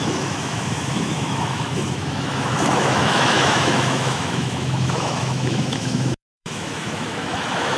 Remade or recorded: remade